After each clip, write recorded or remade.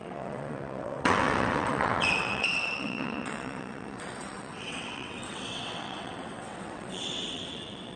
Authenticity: remade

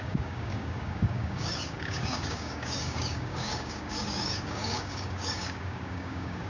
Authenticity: remade